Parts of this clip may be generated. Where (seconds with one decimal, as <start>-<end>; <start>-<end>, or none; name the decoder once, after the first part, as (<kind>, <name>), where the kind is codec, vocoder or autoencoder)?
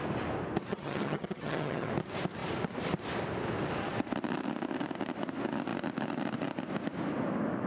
0.7-1.9 (vocoder, HiFi-GAN)